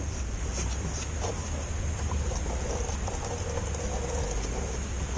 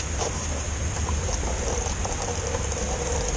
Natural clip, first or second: first